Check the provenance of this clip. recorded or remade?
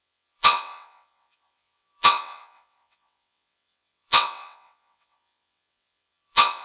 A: remade